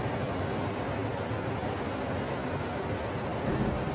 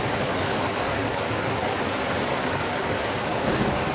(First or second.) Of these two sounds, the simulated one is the second